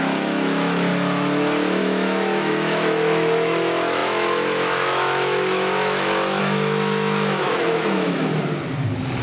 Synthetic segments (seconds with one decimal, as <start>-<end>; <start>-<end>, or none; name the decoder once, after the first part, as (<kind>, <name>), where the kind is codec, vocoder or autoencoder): 0.0-0.9 (autoencoder, DAC-VAE); 1.8-8.3